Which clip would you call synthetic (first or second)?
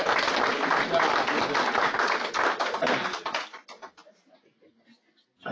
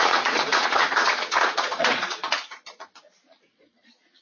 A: second